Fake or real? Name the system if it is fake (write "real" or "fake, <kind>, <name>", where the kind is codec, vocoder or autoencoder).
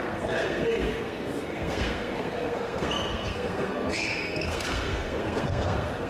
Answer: fake, codec, SNAC